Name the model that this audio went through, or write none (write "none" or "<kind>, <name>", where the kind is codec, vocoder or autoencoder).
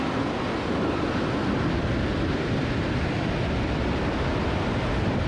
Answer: none